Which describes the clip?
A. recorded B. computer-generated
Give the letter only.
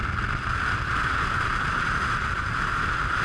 A